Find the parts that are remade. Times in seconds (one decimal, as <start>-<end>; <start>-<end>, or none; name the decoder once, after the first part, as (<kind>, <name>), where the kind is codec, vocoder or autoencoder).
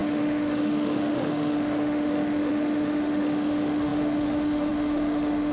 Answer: 0.0-5.5 (autoencoder, DAC-VAE)